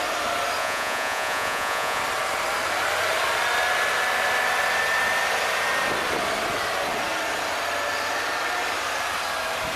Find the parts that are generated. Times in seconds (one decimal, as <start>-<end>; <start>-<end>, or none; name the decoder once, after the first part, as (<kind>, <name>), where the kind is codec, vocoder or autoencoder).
0.6-2.0 (vocoder, Vocos)